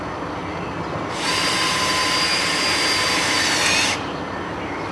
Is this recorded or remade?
recorded